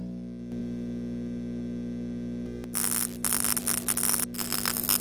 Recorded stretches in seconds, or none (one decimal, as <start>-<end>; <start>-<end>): 0.0-5.0